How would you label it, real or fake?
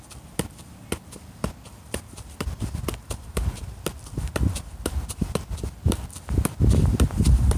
fake